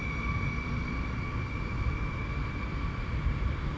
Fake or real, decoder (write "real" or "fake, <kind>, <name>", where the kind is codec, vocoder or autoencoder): fake, vocoder, BigVGAN v2